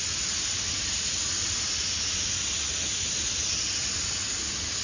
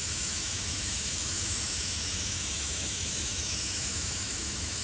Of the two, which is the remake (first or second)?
second